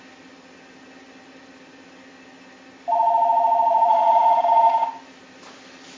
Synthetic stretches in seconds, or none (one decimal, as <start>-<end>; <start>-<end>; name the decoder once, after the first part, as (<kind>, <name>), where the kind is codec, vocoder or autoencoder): 3.7-4.4 (vocoder, Vocos)